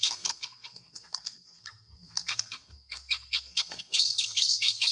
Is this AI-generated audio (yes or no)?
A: yes